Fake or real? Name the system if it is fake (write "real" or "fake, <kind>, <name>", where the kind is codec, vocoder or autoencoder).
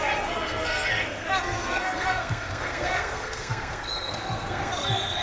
fake, codec, SNAC